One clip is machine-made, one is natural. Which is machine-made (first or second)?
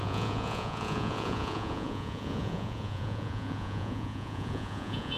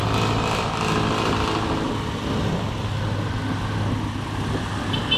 first